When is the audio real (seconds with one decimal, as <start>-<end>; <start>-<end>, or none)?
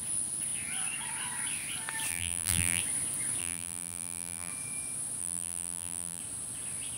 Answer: 0.0-2.1; 2.8-3.4; 4.5-5.2; 6.2-7.0